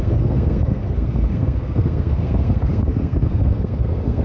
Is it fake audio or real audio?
fake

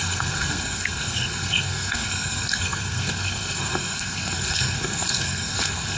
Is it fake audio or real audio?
fake